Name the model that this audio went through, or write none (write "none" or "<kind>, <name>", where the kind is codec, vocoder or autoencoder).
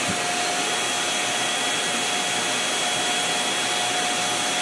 none